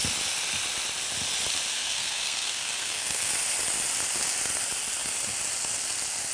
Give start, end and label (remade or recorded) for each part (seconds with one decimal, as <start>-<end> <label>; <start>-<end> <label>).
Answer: 0.0-1.8 recorded; 1.8-3.3 remade; 3.3-6.3 recorded